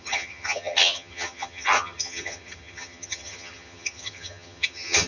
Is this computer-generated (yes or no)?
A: yes